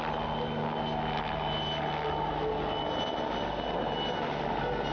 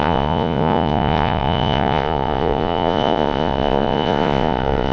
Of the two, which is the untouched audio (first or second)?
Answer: first